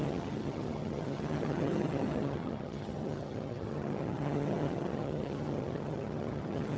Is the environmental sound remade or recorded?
remade